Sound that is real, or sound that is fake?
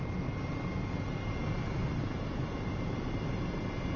real